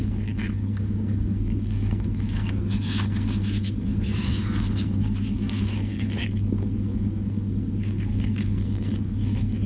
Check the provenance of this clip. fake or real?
fake